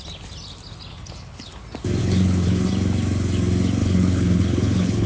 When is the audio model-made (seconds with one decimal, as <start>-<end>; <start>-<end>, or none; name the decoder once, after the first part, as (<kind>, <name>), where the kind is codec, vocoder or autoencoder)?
0.9-1.6 (codec, HILCodec); 2.0-2.7; 3.8-5.1